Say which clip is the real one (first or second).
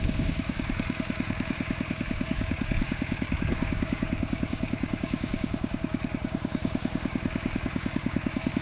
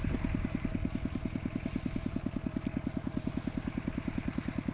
second